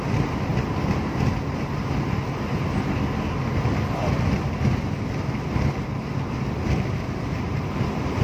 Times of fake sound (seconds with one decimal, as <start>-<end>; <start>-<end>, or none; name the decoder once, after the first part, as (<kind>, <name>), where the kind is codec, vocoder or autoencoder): none